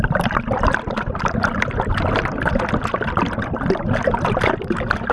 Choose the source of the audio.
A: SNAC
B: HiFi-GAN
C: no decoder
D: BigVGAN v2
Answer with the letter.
C